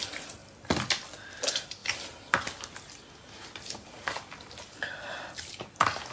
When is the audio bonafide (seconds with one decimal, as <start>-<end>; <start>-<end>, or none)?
0.0-6.1